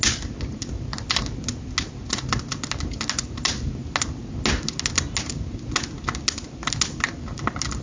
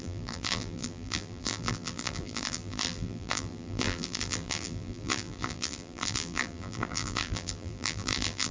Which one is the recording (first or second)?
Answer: first